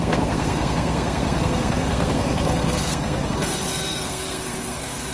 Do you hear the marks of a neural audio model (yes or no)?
yes